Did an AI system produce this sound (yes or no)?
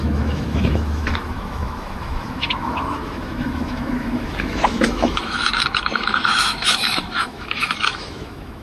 yes